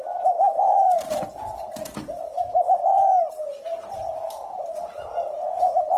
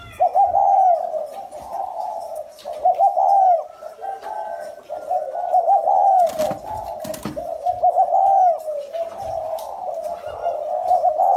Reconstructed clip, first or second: first